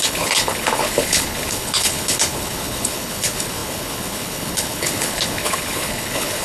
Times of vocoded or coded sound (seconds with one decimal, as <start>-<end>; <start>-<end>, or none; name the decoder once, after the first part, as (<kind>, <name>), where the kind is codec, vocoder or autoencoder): 0.0-6.4 (codec, HILCodec)